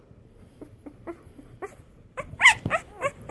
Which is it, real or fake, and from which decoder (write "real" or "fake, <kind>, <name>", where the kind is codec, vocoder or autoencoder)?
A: fake, vocoder, BigVGAN v2